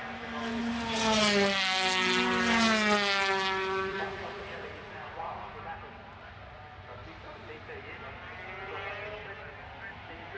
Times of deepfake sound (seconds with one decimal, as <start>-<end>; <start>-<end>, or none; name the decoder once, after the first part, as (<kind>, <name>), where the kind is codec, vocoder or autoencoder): 3.9-5.6 (vocoder, Vocos)